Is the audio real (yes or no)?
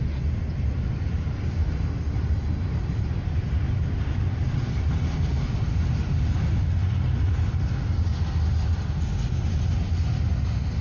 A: yes